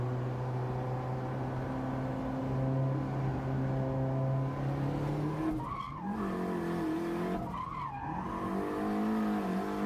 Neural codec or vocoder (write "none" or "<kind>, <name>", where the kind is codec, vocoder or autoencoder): none